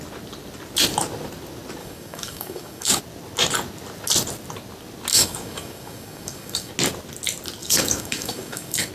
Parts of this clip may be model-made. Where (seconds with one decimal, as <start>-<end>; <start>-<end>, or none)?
1.8-3.0; 5.1-6.7; 7.6-8.9